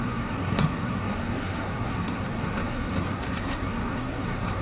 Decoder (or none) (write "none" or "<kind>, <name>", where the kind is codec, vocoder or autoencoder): codec, SNAC